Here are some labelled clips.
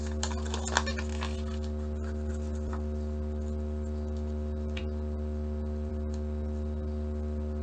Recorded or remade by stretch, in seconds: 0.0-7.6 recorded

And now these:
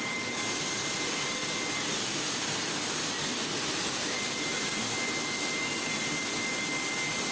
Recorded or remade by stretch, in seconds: 0.0-7.3 recorded

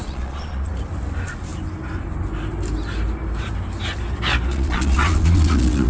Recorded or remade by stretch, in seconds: 0.0-0.7 remade; 0.7-4.5 recorded; 4.5-5.9 remade

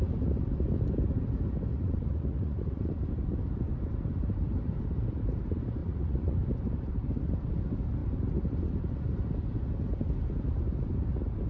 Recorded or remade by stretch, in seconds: 0.0-1.7 recorded; 1.7-2.9 remade; 2.9-5.8 recorded; 5.8-6.4 remade; 6.4-11.5 recorded

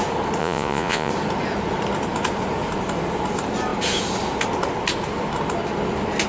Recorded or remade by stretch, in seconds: 0.0-0.4 recorded; 0.4-1.1 remade; 1.1-6.3 recorded

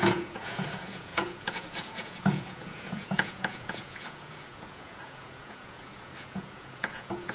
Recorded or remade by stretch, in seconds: 0.0-7.3 remade

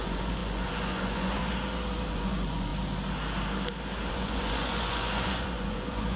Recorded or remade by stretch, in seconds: 0.0-1.4 remade; 1.4-2.1 recorded; 2.1-2.7 remade; 2.7-4.1 recorded; 4.1-6.2 remade

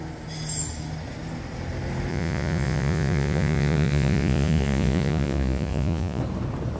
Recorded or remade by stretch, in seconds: 0.0-2.1 recorded; 2.1-6.2 remade; 6.2-6.8 recorded